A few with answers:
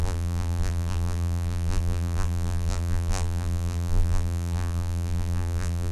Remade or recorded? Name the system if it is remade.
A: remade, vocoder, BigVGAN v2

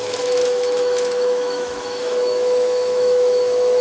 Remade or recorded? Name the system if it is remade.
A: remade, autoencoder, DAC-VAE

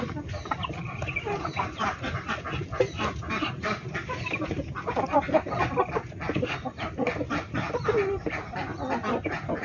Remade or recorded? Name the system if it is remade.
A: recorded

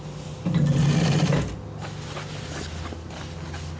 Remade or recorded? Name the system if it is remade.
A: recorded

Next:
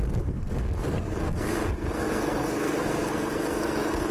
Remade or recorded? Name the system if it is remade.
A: remade, codec, SNAC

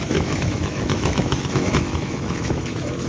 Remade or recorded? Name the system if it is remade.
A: remade, autoencoder, DAC-VAE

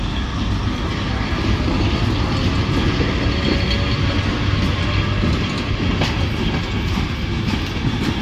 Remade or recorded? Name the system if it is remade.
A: recorded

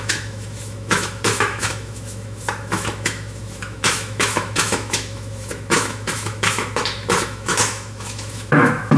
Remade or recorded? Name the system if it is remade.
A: remade, autoencoder, DAC-VAE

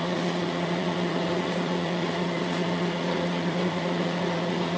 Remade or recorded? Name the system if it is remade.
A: remade, vocoder, Vocos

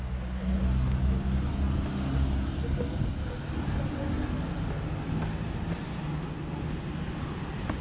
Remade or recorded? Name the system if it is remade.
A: recorded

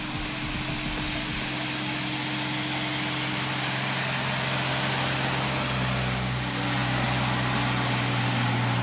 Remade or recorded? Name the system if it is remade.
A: recorded